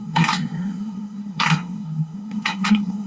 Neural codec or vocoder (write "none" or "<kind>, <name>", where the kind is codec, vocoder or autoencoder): codec, SNAC